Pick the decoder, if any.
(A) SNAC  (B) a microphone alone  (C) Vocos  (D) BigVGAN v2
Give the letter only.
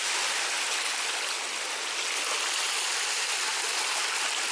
B